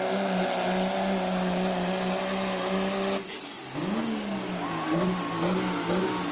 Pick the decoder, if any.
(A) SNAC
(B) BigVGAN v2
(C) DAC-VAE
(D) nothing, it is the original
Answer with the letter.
D